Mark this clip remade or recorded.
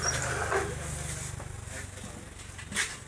recorded